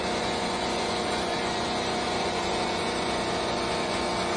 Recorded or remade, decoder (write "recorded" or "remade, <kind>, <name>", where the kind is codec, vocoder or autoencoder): remade, vocoder, Vocos